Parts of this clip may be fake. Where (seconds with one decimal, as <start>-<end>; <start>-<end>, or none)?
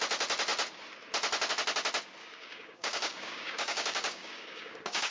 2.2-5.1